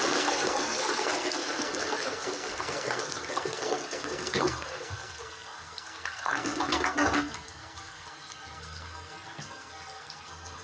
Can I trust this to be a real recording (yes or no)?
no